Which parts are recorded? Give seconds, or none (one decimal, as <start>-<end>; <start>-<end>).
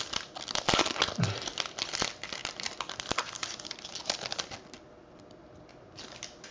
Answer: 0.0-6.5